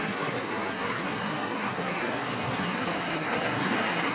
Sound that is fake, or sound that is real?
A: fake